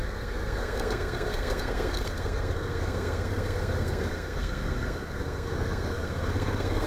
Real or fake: fake